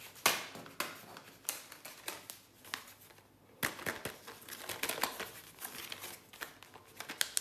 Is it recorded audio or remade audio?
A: recorded